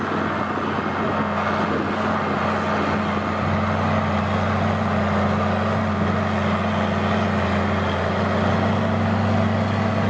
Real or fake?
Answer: real